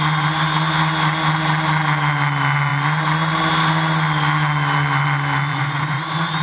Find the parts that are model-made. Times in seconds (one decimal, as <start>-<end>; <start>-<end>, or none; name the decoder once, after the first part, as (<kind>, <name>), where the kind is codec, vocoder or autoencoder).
5.5-6.4 (vocoder, Vocos)